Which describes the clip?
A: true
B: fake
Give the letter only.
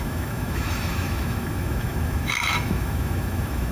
B